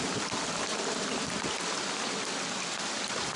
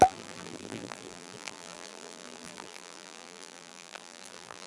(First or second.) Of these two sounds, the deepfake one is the second